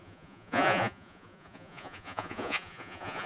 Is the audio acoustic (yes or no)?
no